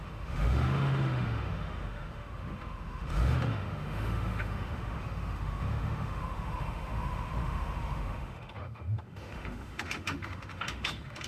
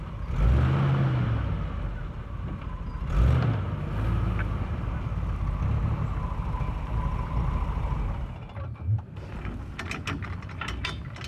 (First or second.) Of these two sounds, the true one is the second